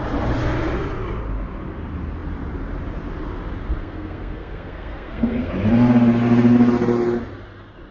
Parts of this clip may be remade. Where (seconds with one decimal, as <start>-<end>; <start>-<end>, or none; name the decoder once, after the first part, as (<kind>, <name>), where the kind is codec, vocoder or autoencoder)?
3.8-5.5 (codec, SNAC)

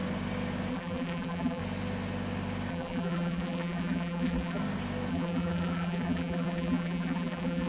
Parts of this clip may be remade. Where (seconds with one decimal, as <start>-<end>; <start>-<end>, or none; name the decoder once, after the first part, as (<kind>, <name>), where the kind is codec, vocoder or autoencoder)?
0.7-1.6 (vocoder, BigVGAN v2); 2.7-4.6; 5.1-7.7

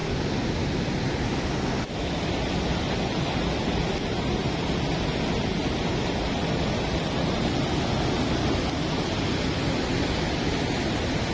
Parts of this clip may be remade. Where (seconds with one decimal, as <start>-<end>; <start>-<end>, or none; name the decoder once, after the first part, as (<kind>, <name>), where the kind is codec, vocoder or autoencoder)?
6.4-7.6 (vocoder, BigVGAN v2)

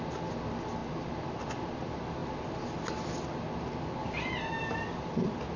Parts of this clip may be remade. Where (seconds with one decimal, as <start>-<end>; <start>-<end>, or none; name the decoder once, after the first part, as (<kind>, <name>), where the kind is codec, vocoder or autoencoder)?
none

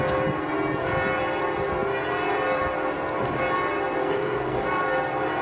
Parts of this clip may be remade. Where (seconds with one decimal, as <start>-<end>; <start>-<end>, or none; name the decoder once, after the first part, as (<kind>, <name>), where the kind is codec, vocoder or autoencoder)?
4.0-4.8 (codec, SNAC)

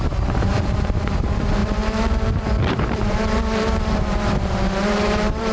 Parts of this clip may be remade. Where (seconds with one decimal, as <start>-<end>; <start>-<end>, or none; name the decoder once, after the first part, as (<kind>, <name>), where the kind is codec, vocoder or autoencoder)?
0.0-5.5 (vocoder, BigVGAN v2)

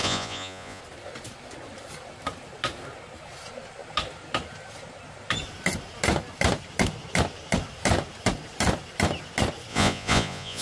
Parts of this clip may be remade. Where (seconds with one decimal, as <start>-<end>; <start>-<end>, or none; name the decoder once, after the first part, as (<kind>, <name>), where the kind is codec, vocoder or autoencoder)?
0.0-0.8 (vocoder, Vocos); 9.7-10.6

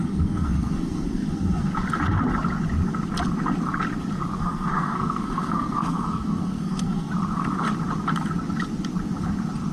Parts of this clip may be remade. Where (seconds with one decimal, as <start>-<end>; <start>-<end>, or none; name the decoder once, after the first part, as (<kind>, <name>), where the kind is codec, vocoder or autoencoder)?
0.0-1.7 (codec, SNAC); 4.4-7.1